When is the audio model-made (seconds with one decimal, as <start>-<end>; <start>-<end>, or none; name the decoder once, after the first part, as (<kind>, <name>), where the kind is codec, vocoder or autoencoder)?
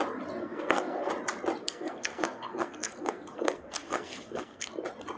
0.4-1.1 (codec, SNAC); 1.6-4.7